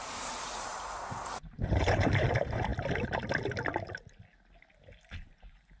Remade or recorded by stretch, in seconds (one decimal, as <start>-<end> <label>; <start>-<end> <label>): 0.0-2.7 remade; 2.7-4.9 recorded; 4.9-5.8 remade